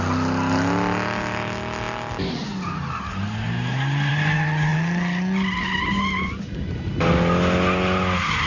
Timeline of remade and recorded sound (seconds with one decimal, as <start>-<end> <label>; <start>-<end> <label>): 0.0-8.5 recorded